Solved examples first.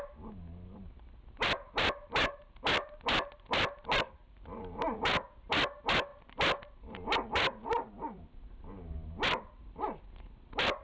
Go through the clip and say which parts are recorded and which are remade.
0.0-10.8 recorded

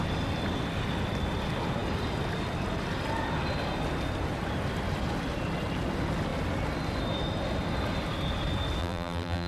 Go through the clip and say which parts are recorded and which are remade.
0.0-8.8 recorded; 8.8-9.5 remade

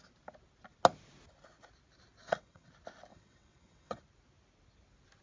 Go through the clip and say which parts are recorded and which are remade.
0.0-2.2 recorded; 2.2-2.7 remade; 2.7-3.1 recorded; 3.1-4.0 remade; 4.0-5.2 recorded

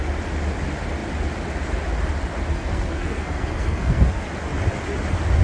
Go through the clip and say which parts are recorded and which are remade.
0.0-2.5 recorded; 2.5-4.2 remade; 4.2-5.4 recorded